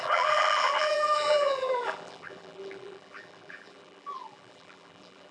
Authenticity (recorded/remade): remade